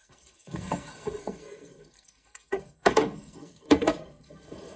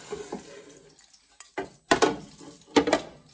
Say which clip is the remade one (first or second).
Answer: first